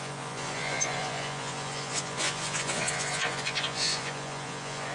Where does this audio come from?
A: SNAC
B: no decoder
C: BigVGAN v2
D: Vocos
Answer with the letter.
D